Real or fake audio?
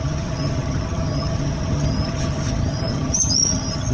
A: fake